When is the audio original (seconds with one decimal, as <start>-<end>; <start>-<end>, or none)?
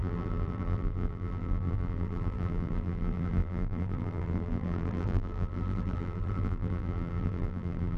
none